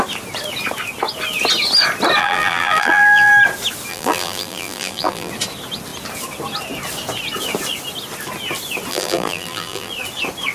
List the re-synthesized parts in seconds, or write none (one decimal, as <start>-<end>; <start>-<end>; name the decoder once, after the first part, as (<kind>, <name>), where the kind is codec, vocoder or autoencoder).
2.2-3.3 (vocoder, BigVGAN v2); 3.9-5.3; 8.9-9.9